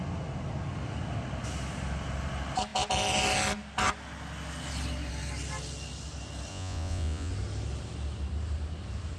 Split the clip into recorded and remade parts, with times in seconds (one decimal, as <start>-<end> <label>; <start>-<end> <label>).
0.0-6.5 recorded; 6.5-7.3 remade; 7.3-9.2 recorded